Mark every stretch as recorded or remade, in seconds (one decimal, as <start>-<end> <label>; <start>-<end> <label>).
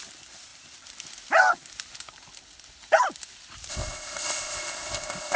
0.0-3.7 recorded; 3.7-5.4 remade